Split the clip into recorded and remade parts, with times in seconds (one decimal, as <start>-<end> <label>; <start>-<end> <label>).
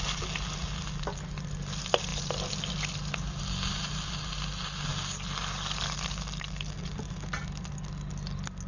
0.0-8.7 recorded